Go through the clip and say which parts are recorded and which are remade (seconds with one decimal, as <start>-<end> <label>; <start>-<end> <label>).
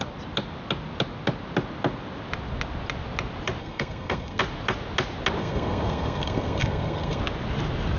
0.0-3.6 recorded; 3.6-4.4 remade; 4.4-5.4 recorded; 5.4-7.2 remade; 7.2-8.0 recorded